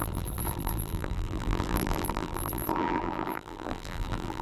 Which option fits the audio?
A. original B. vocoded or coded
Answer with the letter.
B